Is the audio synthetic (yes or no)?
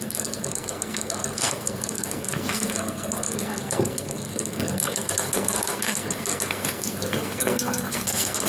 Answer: yes